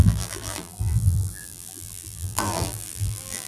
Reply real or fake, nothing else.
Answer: fake